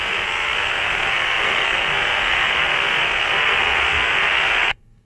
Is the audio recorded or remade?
remade